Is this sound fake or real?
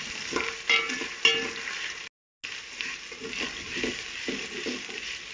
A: real